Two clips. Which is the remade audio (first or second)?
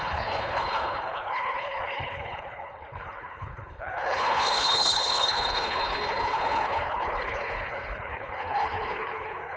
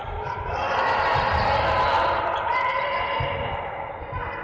first